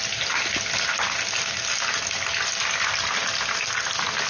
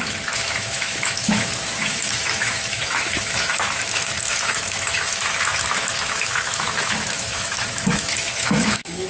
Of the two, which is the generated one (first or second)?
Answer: second